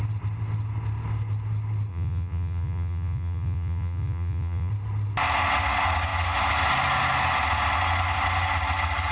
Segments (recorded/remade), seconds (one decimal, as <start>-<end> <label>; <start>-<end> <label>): 0.0-1.9 recorded; 1.9-4.7 remade; 4.7-9.1 recorded